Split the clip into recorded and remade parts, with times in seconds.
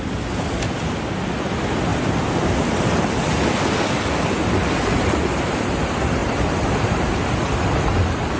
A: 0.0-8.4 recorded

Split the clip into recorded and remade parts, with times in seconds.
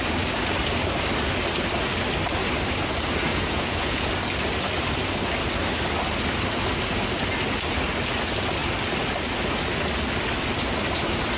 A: 0.0-3.3 recorded; 3.3-4.1 remade; 4.1-11.4 recorded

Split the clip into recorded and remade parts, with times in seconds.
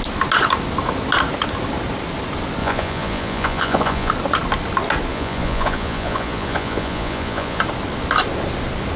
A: 0.0-2.6 recorded; 2.6-4.1 remade; 4.1-5.1 recorded; 5.1-7.6 remade; 7.6-9.0 recorded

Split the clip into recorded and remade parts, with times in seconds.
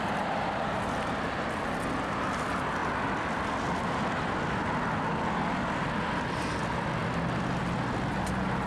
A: 0.0-8.7 recorded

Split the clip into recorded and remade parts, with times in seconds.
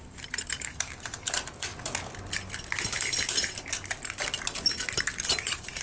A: 0.0-1.7 remade; 1.7-5.2 recorded; 5.2-5.8 remade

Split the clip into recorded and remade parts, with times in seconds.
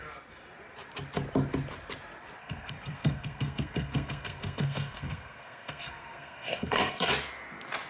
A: 0.0-2.4 recorded; 2.4-7.1 remade; 7.1-7.9 recorded